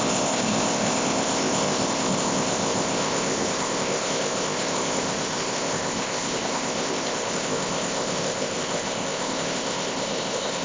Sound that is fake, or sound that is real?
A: fake